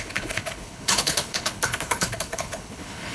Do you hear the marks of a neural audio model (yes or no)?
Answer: yes